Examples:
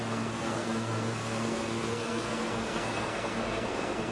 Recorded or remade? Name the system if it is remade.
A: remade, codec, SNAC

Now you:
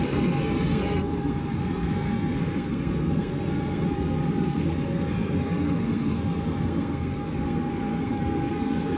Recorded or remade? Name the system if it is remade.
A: remade, codec, SNAC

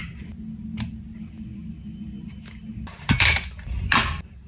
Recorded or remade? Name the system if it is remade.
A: recorded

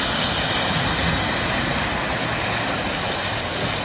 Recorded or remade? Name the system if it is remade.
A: recorded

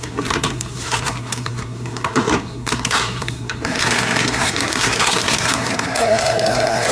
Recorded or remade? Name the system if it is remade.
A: remade, codec, SNAC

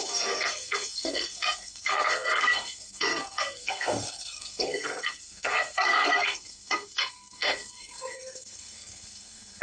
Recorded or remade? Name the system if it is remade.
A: remade, codec, SNAC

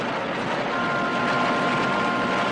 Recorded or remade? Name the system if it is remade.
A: recorded